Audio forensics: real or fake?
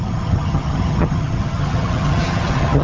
fake